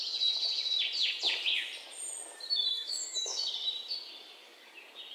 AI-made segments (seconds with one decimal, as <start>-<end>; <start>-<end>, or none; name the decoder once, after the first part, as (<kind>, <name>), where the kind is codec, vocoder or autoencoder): 2.7-3.5 (autoencoder, DAC-VAE)